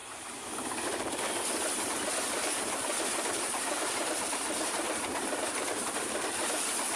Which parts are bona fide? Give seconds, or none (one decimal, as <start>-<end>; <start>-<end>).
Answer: none